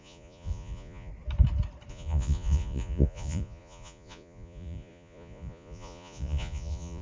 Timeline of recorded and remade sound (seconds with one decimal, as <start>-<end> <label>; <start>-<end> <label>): 0.0-1.1 remade; 1.1-1.9 recorded; 1.9-7.0 remade